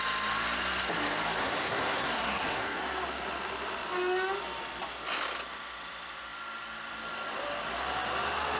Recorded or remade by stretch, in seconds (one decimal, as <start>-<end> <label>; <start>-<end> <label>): 0.0-1.4 recorded; 1.4-2.8 remade; 2.8-8.6 recorded